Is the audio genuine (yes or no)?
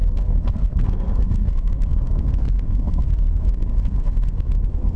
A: no